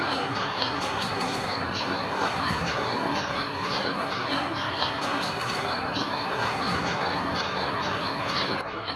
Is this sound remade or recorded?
remade